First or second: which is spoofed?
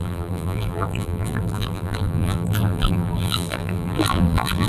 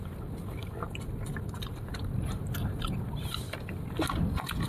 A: first